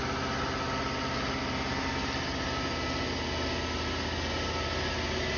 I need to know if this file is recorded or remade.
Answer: recorded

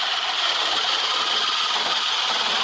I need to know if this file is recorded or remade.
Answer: recorded